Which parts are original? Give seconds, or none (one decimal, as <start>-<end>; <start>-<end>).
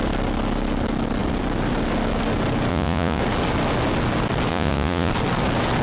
0.0-2.7; 3.2-4.5; 5.1-5.8